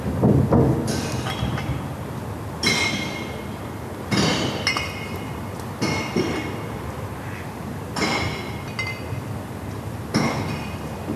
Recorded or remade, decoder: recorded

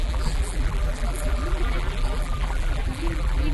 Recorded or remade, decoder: remade, vocoder, BigVGAN v2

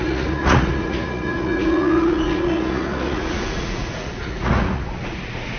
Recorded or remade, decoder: remade, vocoder, Vocos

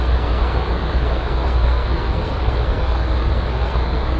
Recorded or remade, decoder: remade, codec, SNAC